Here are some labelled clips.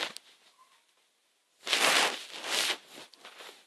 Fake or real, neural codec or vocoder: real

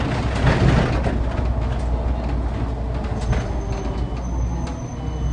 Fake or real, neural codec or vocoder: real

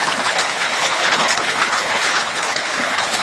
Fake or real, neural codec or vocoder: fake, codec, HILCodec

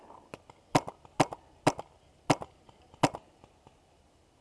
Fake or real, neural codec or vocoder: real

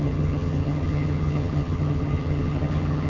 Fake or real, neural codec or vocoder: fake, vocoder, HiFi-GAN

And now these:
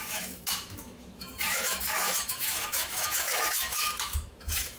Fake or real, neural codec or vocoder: fake, autoencoder, DAC-VAE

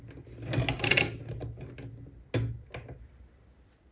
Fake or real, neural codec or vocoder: real